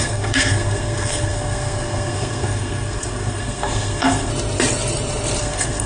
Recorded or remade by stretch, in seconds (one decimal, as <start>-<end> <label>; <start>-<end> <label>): 0.0-4.3 remade; 4.3-5.4 recorded; 5.4-5.9 remade